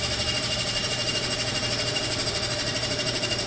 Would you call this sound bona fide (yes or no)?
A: no